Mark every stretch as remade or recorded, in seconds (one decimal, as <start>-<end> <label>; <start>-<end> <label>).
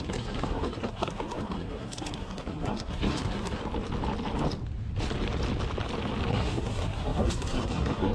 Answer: 0.0-3.6 remade; 3.6-6.3 recorded; 6.3-8.1 remade